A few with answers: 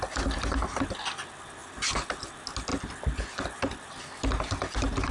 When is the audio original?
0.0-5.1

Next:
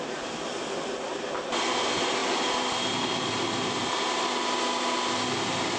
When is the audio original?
0.0-5.8

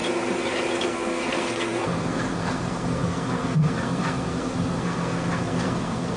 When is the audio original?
0.0-0.8

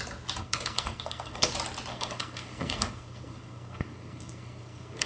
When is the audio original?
0.0-0.4; 1.5-1.9